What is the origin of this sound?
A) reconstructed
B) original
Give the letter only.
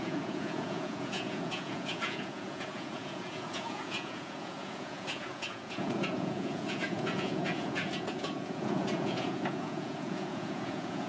A